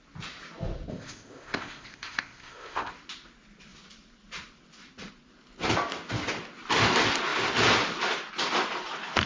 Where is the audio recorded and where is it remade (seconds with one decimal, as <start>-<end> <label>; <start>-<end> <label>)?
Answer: 0.0-0.9 recorded; 0.9-2.9 remade; 2.9-9.3 recorded